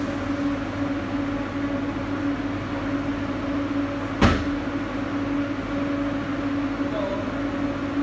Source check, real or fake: real